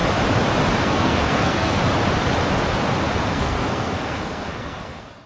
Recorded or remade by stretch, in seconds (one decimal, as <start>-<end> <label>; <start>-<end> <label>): 0.0-0.8 recorded; 0.8-1.8 remade; 1.8-3.3 recorded; 3.3-5.3 remade